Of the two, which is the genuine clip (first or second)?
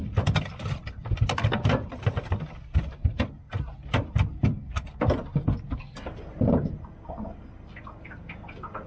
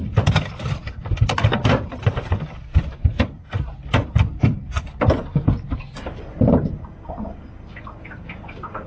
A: first